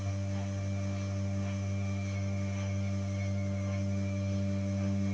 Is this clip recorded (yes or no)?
no